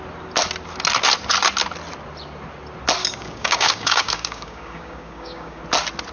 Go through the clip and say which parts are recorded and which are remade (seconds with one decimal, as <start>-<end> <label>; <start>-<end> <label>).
0.0-3.0 recorded; 3.0-5.6 remade; 5.6-6.1 recorded